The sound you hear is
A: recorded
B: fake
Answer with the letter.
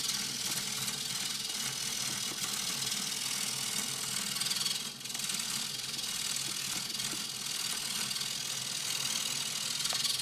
A